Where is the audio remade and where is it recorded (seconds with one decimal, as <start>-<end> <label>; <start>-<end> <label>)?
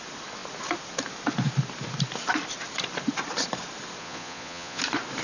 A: 0.0-4.0 recorded; 4.0-4.8 remade; 4.8-5.2 recorded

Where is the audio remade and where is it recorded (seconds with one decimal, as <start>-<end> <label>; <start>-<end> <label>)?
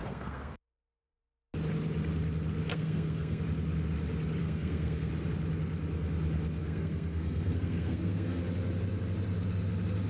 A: 0.0-1.2 remade; 1.2-2.7 recorded; 2.7-3.4 remade; 3.4-4.4 recorded; 4.4-5.1 remade; 5.1-6.6 recorded; 6.6-8.4 remade; 8.4-10.1 recorded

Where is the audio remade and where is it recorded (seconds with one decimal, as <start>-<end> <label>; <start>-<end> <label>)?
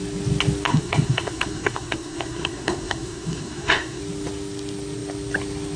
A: 0.0-0.7 recorded; 0.7-4.0 remade; 4.0-5.8 recorded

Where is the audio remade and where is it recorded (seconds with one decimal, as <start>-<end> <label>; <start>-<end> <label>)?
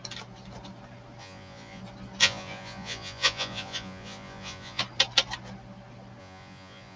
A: 0.0-1.2 recorded; 1.2-1.8 remade; 1.8-2.2 recorded; 2.2-4.8 remade; 4.8-6.2 recorded; 6.2-7.0 remade